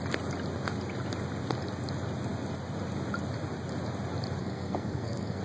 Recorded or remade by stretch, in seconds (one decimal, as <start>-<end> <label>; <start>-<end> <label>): 0.0-4.4 recorded; 4.4-5.4 remade